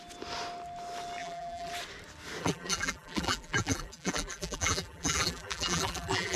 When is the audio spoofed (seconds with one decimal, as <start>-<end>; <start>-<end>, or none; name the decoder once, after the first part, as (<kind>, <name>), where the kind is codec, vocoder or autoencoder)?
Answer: 1.2-1.7 (vocoder, BigVGAN v2); 2.4-6.4